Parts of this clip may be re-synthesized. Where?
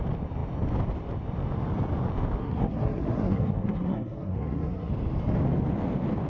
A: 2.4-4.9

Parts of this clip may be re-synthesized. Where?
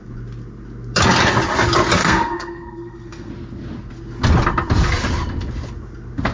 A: 2.0-3.3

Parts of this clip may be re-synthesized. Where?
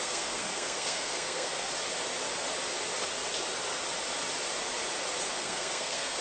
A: 0.0-1.7; 5.4-6.2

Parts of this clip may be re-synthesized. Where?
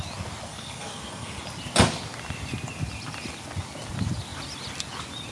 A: 0.5-1.4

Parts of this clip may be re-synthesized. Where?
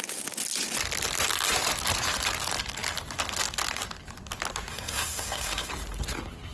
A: 4.7-5.7